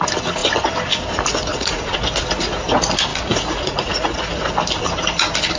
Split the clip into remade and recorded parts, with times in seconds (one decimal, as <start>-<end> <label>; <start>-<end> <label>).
0.0-1.5 recorded; 1.5-2.0 remade; 2.0-3.1 recorded; 3.1-4.5 remade; 4.5-5.6 recorded